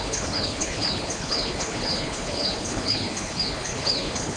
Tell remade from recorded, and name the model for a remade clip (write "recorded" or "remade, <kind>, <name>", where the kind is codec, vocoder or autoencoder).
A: remade, codec, HILCodec